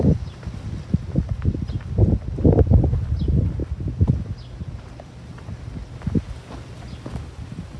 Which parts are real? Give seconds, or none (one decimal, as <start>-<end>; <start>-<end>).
0.0-7.8